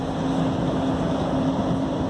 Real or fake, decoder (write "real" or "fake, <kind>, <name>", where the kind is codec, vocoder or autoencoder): real